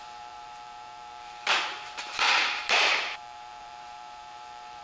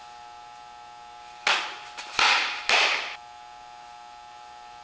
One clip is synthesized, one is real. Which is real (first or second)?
second